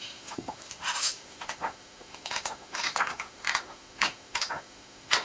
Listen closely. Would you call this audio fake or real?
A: fake